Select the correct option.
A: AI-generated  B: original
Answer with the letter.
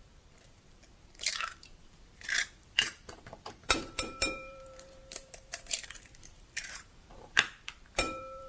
A